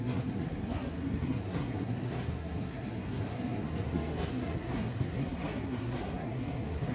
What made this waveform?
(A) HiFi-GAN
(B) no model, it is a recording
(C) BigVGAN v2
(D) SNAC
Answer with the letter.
D